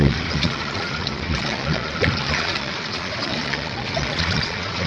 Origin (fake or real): fake